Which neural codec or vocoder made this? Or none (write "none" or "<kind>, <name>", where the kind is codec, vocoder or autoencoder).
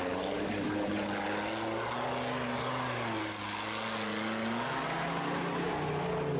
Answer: none